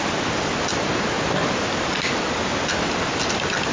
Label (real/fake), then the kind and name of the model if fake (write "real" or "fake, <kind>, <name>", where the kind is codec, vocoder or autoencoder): real